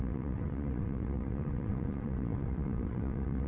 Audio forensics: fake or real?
fake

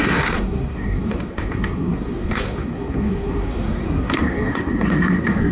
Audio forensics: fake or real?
fake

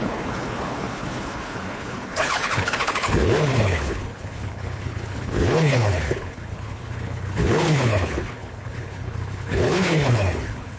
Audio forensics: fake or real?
fake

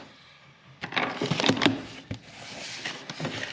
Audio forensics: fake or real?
fake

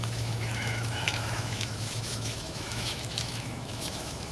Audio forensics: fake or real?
fake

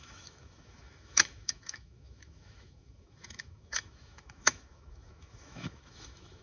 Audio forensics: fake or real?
fake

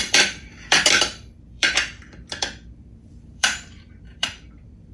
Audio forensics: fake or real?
fake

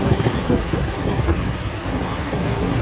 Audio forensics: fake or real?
fake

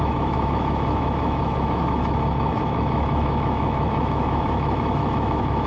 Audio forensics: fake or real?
fake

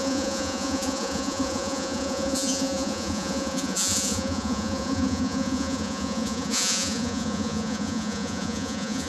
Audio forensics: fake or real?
fake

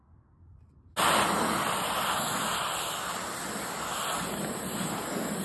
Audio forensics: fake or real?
real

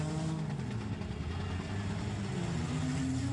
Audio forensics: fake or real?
real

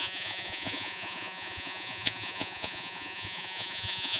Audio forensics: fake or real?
fake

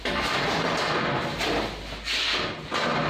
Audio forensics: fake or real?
real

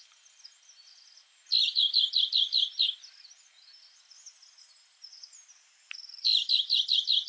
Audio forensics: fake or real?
real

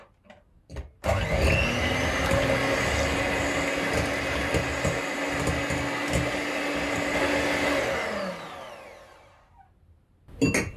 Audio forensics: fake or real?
real